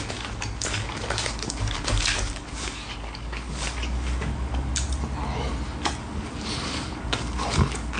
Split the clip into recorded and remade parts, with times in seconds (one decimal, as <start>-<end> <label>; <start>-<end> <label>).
0.0-4.7 remade; 4.7-6.0 recorded; 6.0-8.0 remade